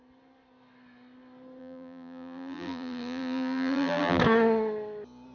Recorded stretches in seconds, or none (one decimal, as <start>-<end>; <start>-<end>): 0.0-1.6; 4.2-5.3